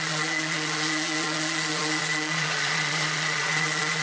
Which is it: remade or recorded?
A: remade